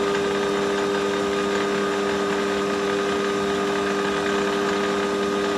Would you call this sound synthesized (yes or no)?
no